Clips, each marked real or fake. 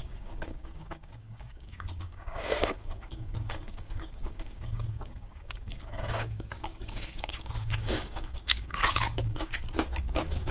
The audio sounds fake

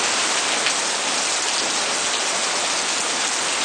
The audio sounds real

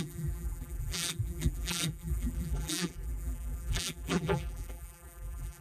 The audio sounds fake